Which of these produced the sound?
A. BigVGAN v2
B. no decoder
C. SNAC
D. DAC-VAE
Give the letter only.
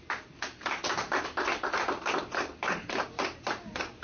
B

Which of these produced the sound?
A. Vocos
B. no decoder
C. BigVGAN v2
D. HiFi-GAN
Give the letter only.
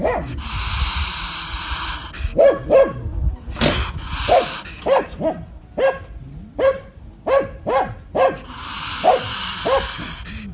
B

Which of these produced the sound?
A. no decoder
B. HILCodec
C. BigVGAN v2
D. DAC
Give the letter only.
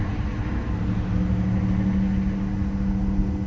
A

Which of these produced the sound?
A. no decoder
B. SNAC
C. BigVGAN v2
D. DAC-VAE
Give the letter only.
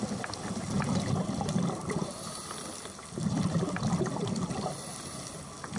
A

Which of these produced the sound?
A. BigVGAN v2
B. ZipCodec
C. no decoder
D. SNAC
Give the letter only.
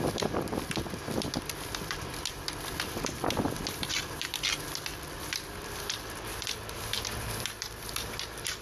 A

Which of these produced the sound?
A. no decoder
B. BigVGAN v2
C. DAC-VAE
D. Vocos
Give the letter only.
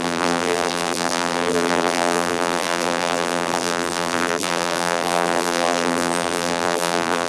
B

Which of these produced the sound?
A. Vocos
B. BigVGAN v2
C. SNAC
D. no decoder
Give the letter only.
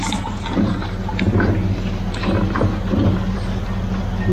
D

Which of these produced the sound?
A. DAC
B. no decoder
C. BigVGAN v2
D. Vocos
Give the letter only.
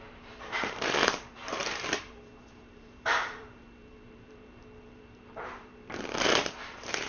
C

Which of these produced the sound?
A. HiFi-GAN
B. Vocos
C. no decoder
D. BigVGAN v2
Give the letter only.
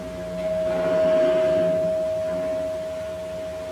C